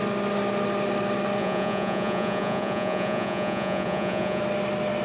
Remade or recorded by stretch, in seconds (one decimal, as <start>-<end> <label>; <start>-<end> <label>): 0.0-1.4 recorded; 1.4-4.4 remade; 4.4-5.0 recorded

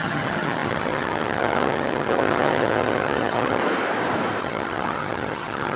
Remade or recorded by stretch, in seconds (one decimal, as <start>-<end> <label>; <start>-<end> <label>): 0.0-3.6 remade; 3.6-4.4 recorded; 4.4-5.8 remade